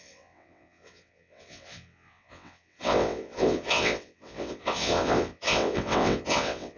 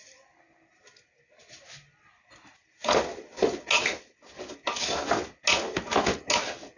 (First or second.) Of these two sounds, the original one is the second